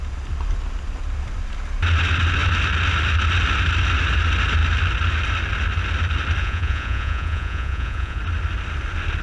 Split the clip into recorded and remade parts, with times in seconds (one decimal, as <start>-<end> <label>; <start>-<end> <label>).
0.0-6.4 recorded; 6.4-8.2 remade; 8.2-9.2 recorded